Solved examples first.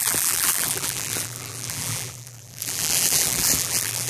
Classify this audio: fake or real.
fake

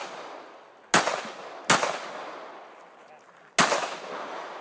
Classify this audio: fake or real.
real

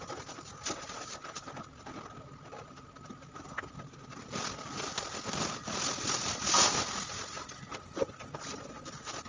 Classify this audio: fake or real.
real